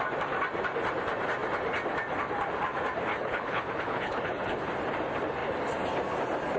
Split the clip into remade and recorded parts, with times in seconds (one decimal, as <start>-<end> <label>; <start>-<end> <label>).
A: 0.0-3.1 recorded; 3.1-4.7 remade; 4.7-6.6 recorded